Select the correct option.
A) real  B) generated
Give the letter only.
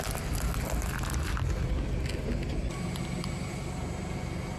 A